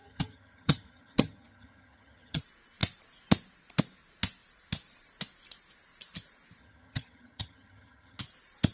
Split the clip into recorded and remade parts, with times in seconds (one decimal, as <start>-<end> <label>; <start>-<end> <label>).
0.0-2.4 remade; 2.4-6.6 recorded; 6.6-8.2 remade; 8.2-8.7 recorded

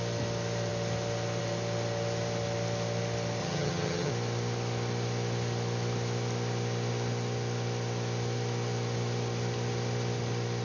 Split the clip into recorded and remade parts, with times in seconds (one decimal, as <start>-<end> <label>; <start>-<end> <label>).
0.0-3.4 recorded; 3.4-4.1 remade; 4.1-10.6 recorded

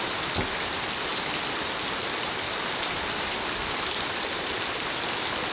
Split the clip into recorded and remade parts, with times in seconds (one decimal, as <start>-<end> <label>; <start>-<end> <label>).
0.0-5.5 recorded

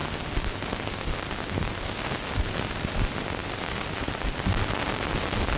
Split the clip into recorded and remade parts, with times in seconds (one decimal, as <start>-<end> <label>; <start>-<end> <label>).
0.0-5.6 recorded

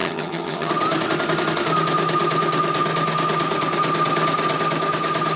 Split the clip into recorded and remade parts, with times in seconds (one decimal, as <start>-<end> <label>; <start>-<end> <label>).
0.0-0.7 remade; 0.7-5.4 recorded

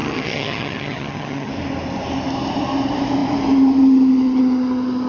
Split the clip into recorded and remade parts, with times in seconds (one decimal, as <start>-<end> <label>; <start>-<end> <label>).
0.0-1.5 remade; 1.5-5.1 recorded